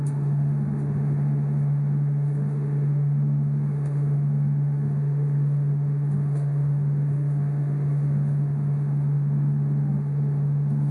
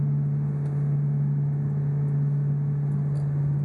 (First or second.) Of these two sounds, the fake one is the first